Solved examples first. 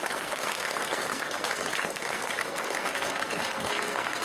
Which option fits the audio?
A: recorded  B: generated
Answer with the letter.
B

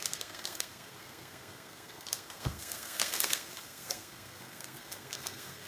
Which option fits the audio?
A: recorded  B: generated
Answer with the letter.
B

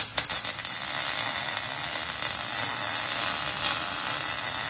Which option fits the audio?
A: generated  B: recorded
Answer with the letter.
B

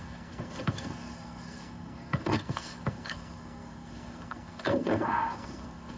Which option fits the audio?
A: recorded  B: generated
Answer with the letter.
B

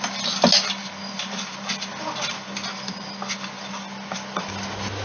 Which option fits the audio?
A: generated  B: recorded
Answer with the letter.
B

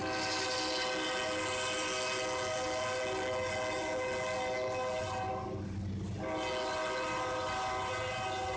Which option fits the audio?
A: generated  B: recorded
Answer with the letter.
B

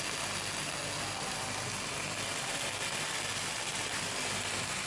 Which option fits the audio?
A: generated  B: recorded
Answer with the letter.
B